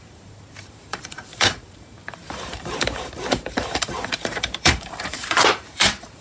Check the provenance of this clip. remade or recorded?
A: remade